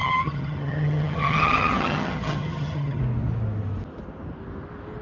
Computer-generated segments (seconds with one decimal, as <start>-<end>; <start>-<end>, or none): 0.0-3.0